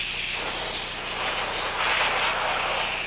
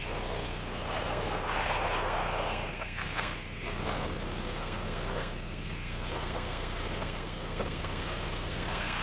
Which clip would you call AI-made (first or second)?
second